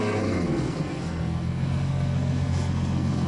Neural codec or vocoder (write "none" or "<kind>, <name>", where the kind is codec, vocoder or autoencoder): codec, SNAC